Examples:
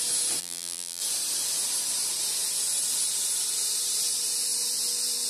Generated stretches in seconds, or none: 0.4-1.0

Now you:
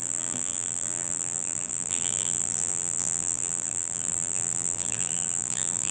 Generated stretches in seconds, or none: 0.0-5.9

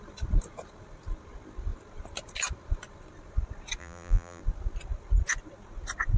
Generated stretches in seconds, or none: 3.8-4.4

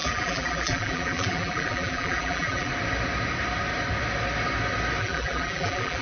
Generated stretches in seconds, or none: 0.0-2.7; 5.0-6.0

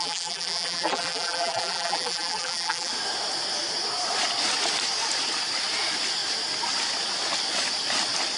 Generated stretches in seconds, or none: 0.0-2.9

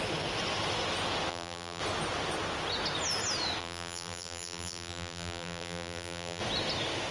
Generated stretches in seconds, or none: 1.3-1.8; 3.6-6.4

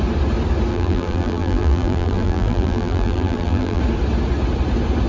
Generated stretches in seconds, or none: 0.7-3.8